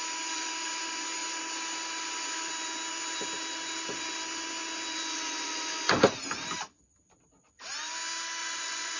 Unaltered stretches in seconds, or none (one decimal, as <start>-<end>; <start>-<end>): 0.0-8.4